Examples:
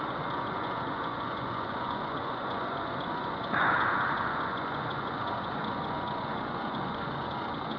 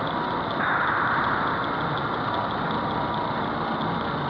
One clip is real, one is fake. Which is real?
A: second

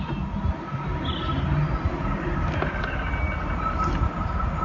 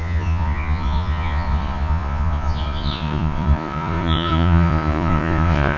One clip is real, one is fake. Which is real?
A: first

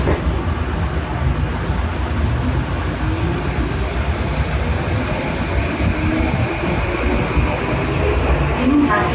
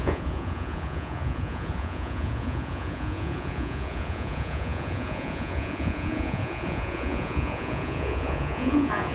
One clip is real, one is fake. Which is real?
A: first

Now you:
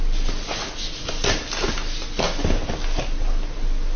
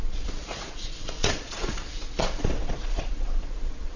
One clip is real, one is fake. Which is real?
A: first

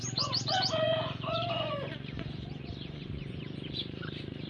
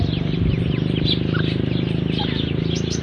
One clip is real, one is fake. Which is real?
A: second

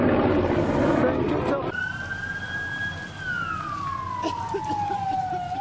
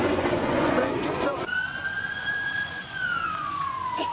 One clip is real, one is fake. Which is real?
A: first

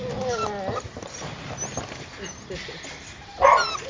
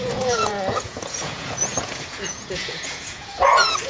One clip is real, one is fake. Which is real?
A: first